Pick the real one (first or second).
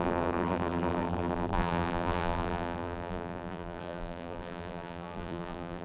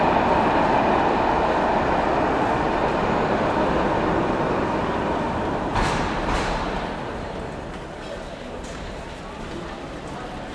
second